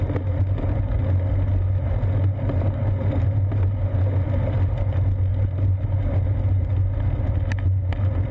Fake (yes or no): no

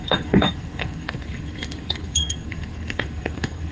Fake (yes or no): yes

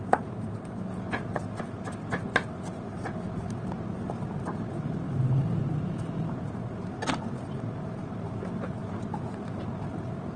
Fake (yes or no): no